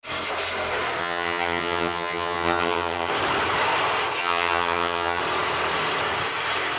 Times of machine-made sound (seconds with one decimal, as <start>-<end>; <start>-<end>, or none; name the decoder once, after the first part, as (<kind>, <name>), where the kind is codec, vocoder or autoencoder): 1.0-3.1 (vocoder, HiFi-GAN); 4.2-5.2